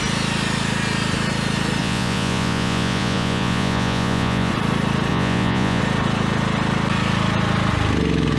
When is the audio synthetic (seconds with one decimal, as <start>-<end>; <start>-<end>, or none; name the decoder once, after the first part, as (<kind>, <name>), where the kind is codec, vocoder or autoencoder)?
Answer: 1.8-4.5 (vocoder, Vocos); 5.1-5.8